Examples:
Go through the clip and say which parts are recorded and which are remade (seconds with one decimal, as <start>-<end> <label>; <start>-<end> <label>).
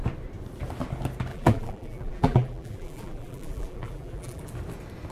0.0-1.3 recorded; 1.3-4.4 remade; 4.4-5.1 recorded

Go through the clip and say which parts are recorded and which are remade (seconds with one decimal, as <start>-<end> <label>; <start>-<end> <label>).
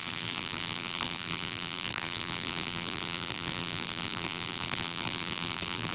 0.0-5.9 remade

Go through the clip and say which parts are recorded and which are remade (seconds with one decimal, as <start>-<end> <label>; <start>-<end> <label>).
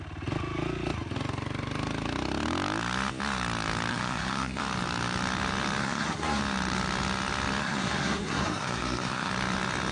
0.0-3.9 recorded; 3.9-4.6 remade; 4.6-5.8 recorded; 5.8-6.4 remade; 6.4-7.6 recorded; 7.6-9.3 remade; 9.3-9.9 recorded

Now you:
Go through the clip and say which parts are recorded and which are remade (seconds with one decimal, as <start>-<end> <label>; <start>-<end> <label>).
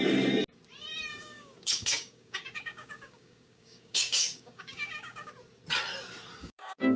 0.0-1.1 recorded; 1.1-5.3 remade; 5.3-6.4 recorded; 6.4-7.0 remade